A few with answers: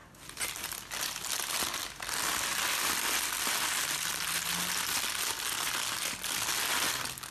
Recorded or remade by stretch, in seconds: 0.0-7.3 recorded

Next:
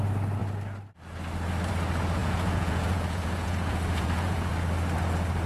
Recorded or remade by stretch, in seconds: 0.0-2.2 recorded; 2.2-4.5 remade; 4.5-5.5 recorded

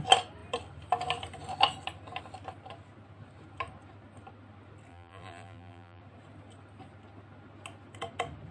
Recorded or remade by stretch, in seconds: 0.0-4.9 recorded; 4.9-6.0 remade; 6.0-8.5 recorded